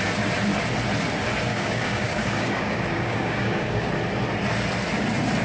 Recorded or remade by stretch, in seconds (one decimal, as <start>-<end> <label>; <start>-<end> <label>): 0.0-1.5 recorded; 1.5-3.9 remade; 3.9-5.4 recorded